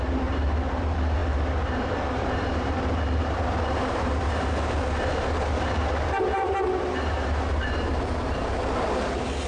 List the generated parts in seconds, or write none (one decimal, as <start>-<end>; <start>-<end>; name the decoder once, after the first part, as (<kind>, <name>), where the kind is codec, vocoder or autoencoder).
0.0-9.5 (vocoder, BigVGAN v2)